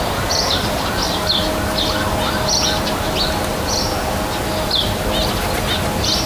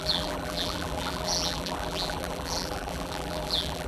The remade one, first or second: second